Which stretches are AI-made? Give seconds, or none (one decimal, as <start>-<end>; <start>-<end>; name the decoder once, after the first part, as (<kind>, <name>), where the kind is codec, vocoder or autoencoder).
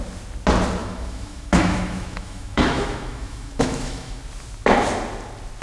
0.8-4.2 (autoencoder, DAC-VAE)